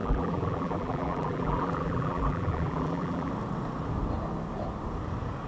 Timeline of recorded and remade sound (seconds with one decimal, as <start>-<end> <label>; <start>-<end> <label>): 0.0-3.3 remade; 3.3-5.5 recorded